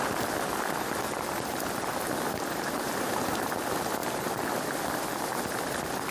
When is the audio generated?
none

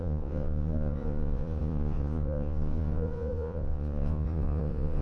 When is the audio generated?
0.0-5.0 (vocoder, Vocos)

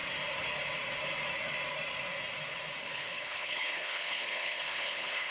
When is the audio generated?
2.8-5.3 (codec, HILCodec)

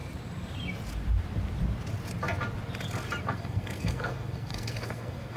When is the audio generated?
3.2-5.4 (codec, SNAC)

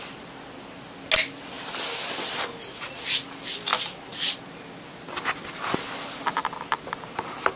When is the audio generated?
none

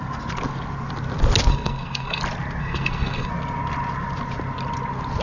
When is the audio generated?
1.5-2.2 (codec, SNAC); 2.6-3.3